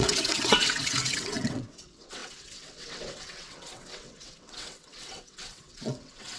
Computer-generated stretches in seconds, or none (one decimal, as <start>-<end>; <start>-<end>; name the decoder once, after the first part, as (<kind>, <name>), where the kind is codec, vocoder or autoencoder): 0.0-6.4 (vocoder, WaveNeXt)